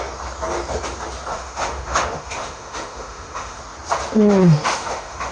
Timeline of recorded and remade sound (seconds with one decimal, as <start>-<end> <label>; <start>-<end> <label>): 0.0-1.3 recorded; 1.3-3.6 remade; 3.6-4.4 recorded; 4.4-5.3 remade